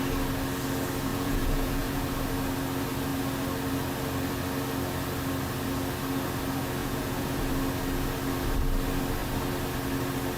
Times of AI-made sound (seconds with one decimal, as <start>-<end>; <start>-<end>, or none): 1.1-2.0; 6.8-7.5